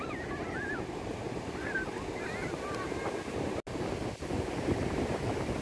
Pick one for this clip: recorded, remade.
recorded